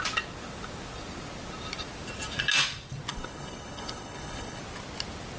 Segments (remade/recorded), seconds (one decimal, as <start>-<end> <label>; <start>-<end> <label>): 0.0-3.1 recorded; 3.1-4.6 remade; 4.6-5.4 recorded